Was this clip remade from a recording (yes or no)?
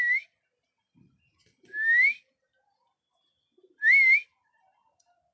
no